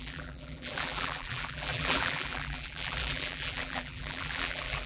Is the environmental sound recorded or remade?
remade